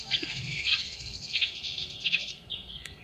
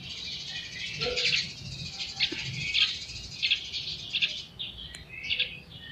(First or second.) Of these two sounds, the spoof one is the first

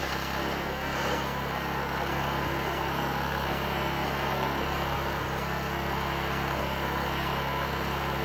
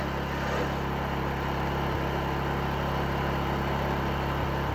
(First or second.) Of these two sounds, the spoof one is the first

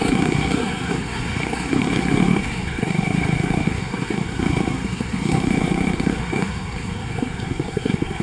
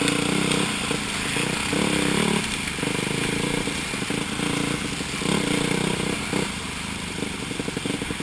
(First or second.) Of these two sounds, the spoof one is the first